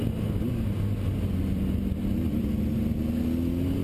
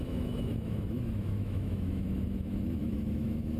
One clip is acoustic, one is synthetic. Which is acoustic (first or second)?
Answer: first